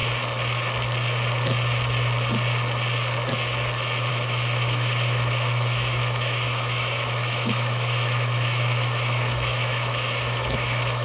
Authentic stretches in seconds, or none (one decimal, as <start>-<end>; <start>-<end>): 0.0-4.1